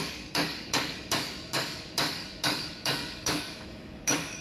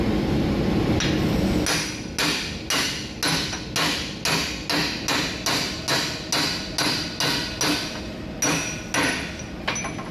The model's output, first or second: first